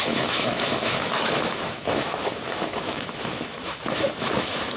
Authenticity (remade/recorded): remade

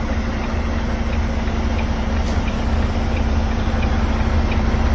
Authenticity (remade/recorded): recorded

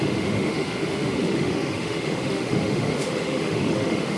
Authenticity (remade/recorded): remade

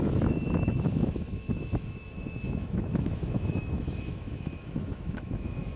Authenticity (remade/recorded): remade